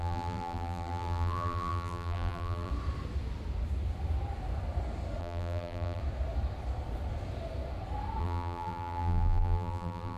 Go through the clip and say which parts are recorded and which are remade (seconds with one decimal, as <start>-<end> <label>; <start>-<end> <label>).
0.0-2.7 remade; 2.7-5.2 recorded; 5.2-6.0 remade; 6.0-8.2 recorded; 8.2-10.2 remade